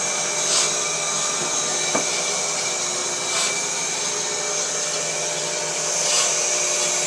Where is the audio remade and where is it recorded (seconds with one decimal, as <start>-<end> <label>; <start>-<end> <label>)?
0.0-7.1 recorded